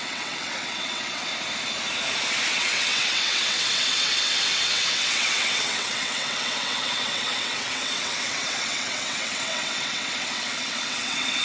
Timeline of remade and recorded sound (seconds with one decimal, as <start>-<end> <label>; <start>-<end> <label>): 0.0-1.3 remade; 1.3-2.5 recorded; 2.5-11.4 remade